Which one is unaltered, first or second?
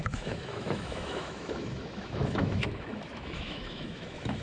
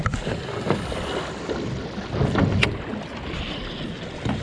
second